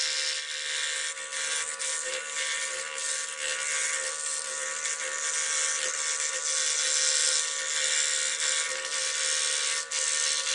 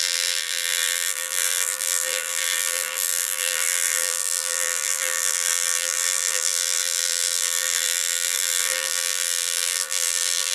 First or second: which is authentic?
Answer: first